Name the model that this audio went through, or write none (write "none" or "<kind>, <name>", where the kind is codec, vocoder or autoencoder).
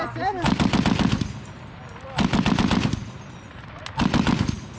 none